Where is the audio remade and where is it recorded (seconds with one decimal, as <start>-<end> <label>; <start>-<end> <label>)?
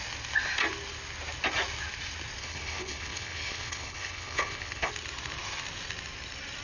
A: 0.0-2.4 recorded; 2.4-4.9 remade; 4.9-6.6 recorded